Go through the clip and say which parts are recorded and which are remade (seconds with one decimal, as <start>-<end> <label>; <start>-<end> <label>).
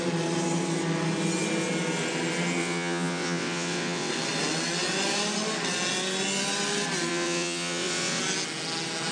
0.0-2.6 recorded; 2.6-4.1 remade; 4.1-7.1 recorded; 7.1-8.2 remade; 8.2-9.1 recorded